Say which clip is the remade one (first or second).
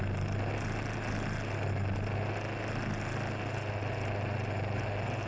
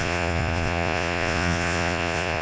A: second